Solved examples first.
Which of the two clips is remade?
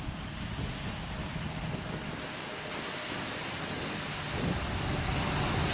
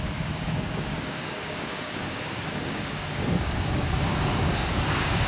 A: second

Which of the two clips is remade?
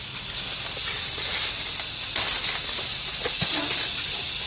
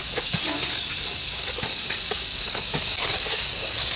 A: second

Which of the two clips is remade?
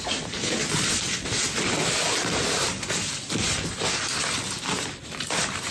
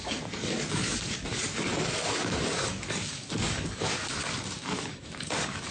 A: second